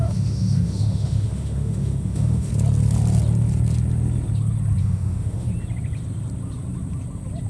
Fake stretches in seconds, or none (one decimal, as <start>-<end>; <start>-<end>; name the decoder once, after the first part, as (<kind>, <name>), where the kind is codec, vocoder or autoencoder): 0.0-2.5 (autoencoder, DAC-VAE); 4.8-5.5